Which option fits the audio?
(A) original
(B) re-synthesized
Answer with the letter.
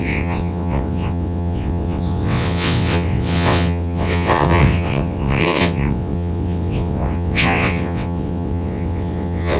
B